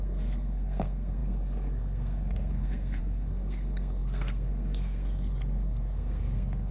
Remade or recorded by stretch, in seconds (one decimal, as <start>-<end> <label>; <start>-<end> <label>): 0.0-6.7 remade